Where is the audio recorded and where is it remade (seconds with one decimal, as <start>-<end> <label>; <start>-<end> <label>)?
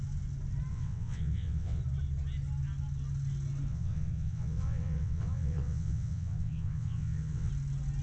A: 0.0-0.7 recorded; 0.7-1.8 remade; 1.8-3.7 recorded; 3.7-7.5 remade; 7.5-8.0 recorded